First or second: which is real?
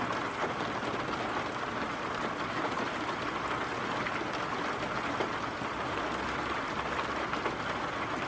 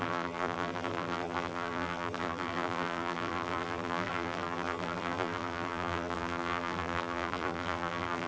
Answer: first